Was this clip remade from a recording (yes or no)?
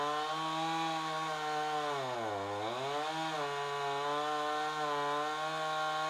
no